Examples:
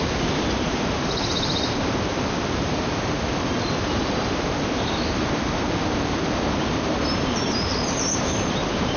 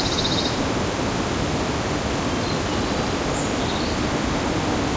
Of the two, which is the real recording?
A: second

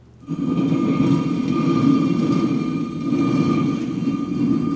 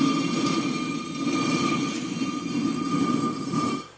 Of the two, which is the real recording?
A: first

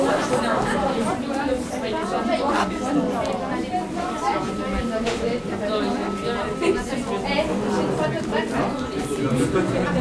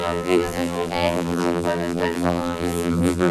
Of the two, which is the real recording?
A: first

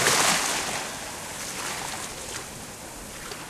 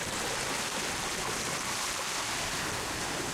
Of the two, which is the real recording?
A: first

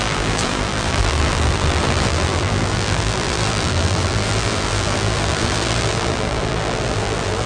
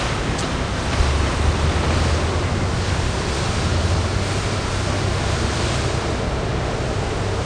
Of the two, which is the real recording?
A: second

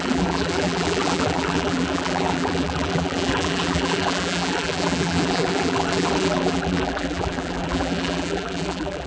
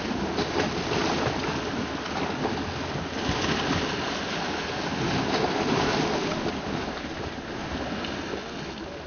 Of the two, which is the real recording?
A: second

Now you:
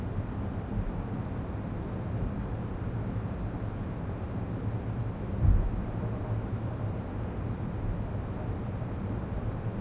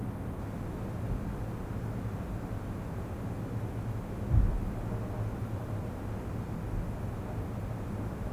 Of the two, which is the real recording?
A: second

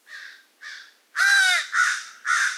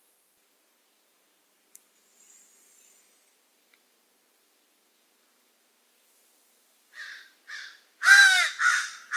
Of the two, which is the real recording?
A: first